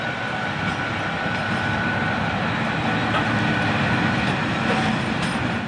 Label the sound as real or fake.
real